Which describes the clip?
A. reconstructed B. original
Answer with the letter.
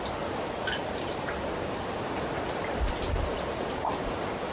B